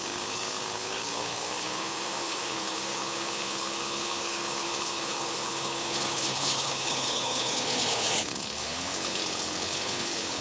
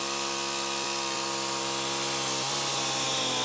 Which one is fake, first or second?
first